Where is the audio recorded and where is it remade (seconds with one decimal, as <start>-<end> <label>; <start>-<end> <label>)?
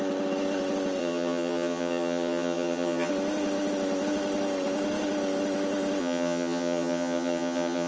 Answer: 0.0-1.0 recorded; 1.0-3.1 remade; 3.1-6.0 recorded; 6.0-7.9 remade